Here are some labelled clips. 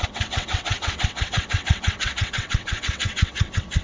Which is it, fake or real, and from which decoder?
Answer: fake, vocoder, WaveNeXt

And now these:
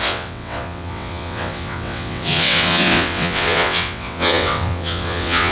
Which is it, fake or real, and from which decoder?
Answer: fake, vocoder, WaveNeXt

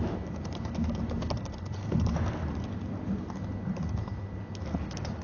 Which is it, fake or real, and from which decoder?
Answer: real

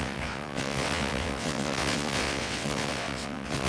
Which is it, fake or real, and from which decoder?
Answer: fake, vocoder, WaveNeXt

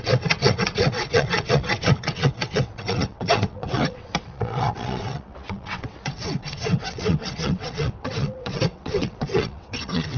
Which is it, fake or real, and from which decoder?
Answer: fake, vocoder, WaveNeXt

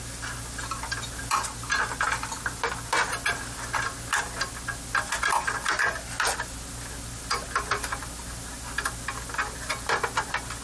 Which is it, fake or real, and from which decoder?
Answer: real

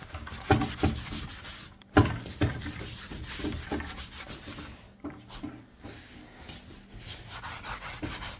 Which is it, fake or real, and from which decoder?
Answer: real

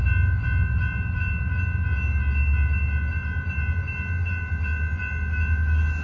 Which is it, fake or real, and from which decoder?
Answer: real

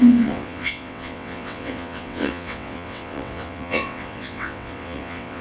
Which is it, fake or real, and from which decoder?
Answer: fake, vocoder, WaveNeXt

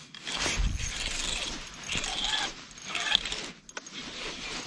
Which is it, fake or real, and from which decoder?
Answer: real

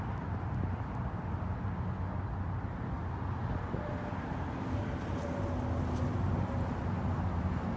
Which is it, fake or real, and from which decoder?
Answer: real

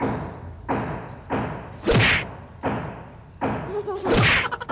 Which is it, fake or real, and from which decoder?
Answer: real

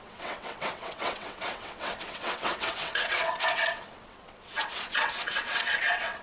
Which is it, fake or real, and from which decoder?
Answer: fake, vocoder, WaveNeXt